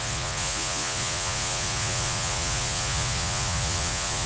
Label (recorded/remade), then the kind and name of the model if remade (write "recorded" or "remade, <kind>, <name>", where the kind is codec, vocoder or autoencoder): remade, vocoder, Vocos